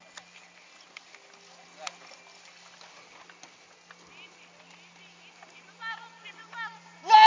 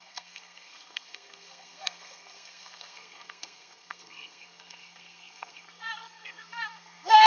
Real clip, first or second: first